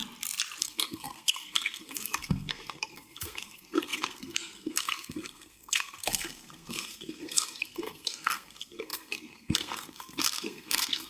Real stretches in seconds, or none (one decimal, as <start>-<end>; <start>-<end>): 0.0-0.6